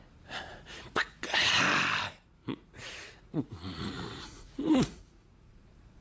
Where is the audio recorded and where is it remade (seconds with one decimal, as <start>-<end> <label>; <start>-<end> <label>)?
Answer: 0.0-0.5 recorded; 0.5-1.6 remade; 1.6-2.4 recorded; 2.4-6.0 remade